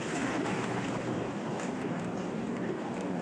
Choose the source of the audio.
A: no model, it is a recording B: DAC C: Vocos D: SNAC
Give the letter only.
B